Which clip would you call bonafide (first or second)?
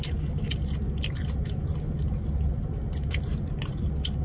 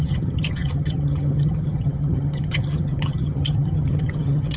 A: first